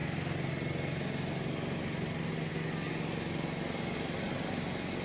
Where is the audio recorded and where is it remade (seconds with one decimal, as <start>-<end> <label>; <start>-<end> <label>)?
0.0-5.0 recorded